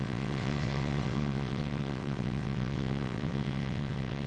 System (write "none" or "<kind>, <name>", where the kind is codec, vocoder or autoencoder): vocoder, WaveNeXt